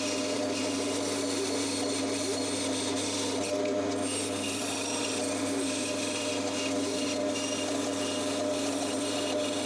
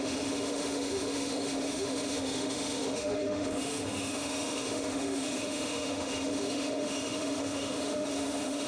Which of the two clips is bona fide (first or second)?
first